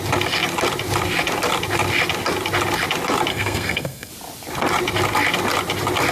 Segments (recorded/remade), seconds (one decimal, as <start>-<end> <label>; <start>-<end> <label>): 0.0-3.3 recorded; 3.3-4.1 remade; 4.1-6.1 recorded